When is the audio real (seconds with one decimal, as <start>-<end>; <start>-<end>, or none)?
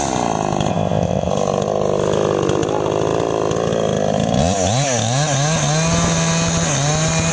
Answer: 0.0-0.7; 1.3-7.3